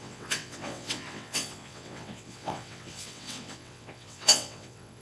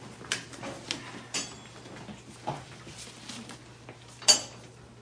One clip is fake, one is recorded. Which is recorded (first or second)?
second